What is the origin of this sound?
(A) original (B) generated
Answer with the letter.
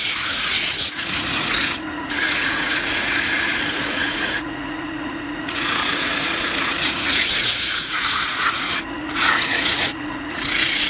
B